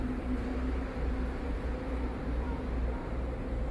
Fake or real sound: fake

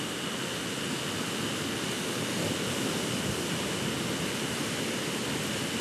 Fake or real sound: real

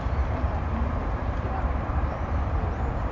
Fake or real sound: fake